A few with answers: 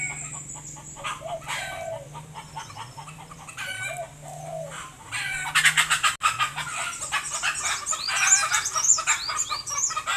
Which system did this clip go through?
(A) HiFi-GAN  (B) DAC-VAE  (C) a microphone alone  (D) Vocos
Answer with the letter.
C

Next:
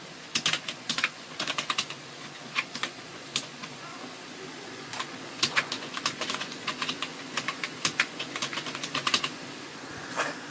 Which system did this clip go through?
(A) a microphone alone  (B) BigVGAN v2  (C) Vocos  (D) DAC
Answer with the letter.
C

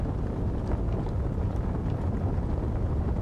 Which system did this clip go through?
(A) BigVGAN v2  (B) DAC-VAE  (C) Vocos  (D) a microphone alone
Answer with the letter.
D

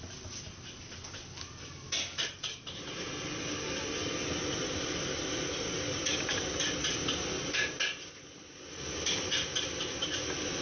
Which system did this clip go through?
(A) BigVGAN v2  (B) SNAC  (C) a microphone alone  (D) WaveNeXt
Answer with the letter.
C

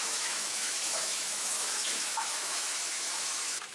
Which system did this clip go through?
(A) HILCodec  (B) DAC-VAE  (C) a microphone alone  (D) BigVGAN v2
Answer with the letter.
B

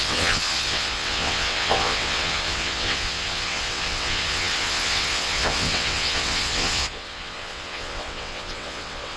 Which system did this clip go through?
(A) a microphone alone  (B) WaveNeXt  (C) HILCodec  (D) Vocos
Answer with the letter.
B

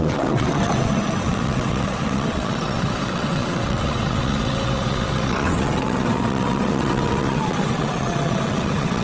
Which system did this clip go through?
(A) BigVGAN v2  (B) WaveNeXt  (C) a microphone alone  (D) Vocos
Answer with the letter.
B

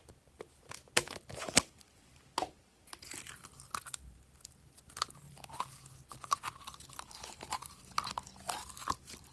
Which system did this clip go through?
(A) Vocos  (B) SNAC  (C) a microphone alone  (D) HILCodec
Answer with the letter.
C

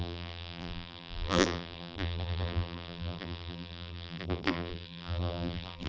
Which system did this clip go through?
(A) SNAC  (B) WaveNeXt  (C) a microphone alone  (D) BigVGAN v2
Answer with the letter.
D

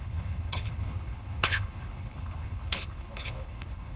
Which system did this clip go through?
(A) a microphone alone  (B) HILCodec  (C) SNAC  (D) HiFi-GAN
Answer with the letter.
B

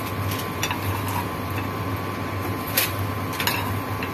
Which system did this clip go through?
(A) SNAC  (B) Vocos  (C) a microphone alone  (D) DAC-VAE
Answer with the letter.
C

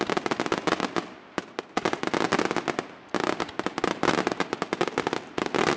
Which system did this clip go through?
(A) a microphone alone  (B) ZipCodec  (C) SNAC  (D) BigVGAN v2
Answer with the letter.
A